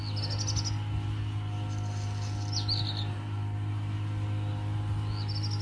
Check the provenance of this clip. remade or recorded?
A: recorded